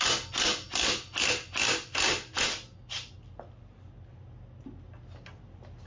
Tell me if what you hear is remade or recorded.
recorded